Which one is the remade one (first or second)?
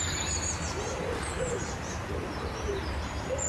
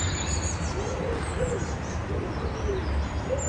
first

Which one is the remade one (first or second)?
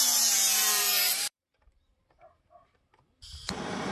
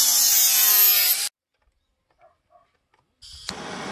first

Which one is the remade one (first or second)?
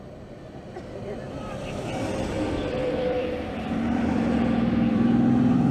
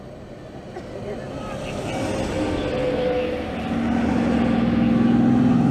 first